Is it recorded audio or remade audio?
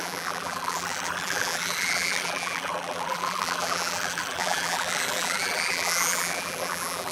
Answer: remade